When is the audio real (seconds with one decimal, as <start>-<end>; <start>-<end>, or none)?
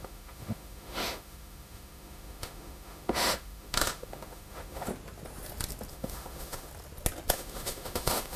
4.9-5.9; 6.7-7.3